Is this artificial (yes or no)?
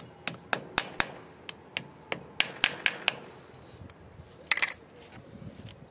no